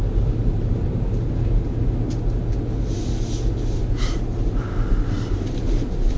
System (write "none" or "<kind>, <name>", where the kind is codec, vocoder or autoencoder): none